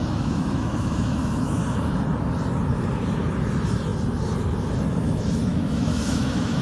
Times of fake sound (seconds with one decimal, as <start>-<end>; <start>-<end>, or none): 0.0-1.6; 5.5-6.6